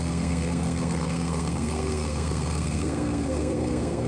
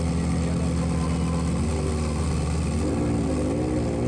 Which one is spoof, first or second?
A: first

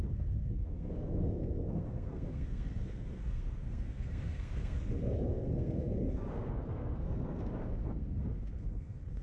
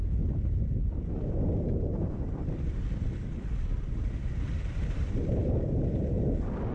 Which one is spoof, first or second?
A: first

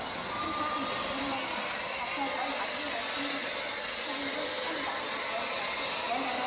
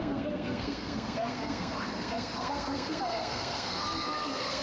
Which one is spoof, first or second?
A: second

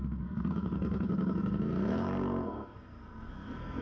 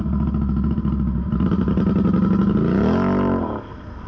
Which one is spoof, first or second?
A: first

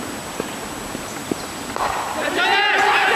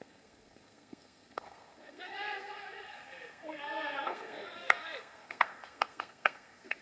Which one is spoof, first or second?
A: second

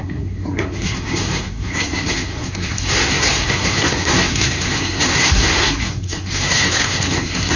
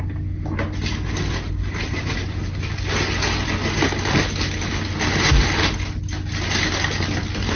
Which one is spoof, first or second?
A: first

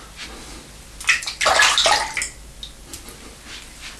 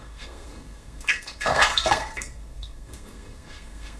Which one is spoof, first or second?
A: second